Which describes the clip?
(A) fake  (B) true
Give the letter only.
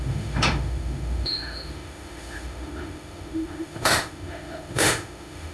A